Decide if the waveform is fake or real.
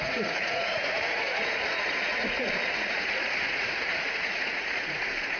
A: fake